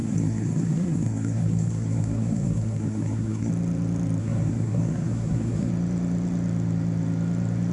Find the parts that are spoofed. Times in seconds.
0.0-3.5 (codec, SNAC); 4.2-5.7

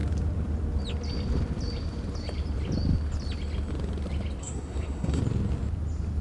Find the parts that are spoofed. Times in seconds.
4.4-5.2 (codec, SNAC)

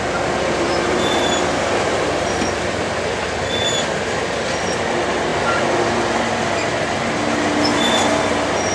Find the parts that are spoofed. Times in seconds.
none